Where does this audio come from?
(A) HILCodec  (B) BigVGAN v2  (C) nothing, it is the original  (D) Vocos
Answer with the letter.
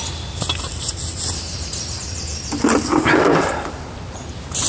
C